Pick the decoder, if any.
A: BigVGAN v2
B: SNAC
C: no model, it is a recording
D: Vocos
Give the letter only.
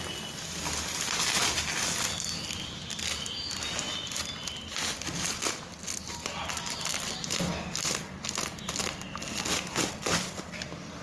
C